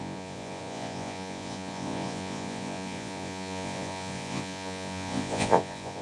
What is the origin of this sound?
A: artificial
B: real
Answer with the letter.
A